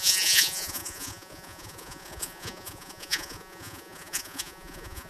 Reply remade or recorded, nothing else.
remade